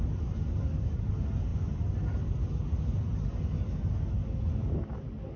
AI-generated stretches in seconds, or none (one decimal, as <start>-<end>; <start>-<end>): none